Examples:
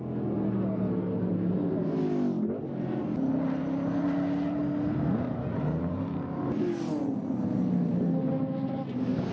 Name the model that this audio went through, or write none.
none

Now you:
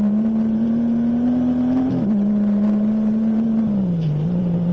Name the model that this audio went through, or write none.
vocoder, BigVGAN v2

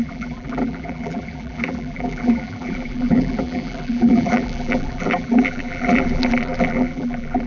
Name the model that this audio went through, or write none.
vocoder, BigVGAN v2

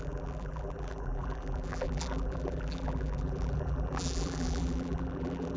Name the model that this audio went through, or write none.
vocoder, BigVGAN v2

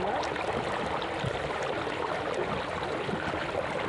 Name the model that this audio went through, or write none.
none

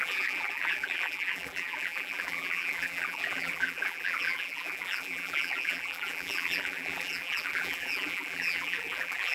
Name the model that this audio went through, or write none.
vocoder, BigVGAN v2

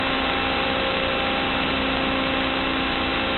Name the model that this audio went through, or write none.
none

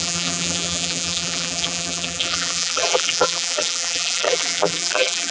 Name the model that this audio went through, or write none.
vocoder, BigVGAN v2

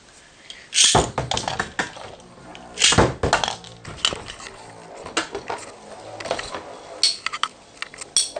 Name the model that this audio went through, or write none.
none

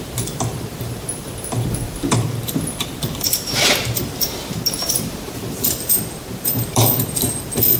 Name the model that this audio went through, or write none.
vocoder, BigVGAN v2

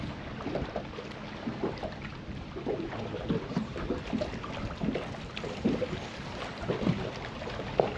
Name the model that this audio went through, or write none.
none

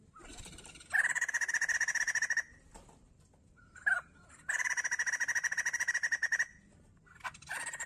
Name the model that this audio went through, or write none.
none